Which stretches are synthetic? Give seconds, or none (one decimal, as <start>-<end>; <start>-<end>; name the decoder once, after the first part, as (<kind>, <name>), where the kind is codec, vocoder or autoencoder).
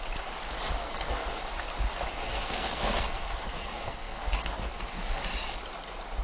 0.8-1.4 (codec, SNAC); 2.1-5.2